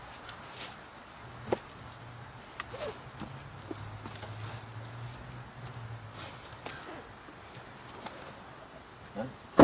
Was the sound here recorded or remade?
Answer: recorded